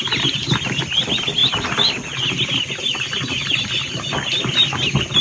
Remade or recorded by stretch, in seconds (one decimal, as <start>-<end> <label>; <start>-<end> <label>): 0.0-5.2 recorded